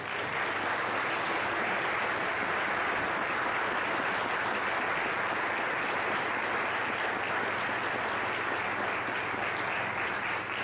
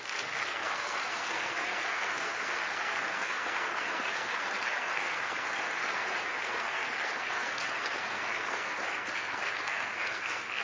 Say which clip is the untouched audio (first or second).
first